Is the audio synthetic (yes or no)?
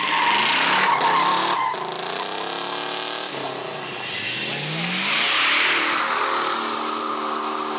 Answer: no